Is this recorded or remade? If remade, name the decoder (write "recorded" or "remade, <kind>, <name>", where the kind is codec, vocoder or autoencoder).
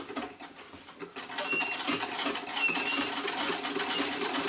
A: recorded